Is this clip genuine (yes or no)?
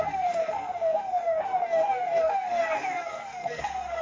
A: no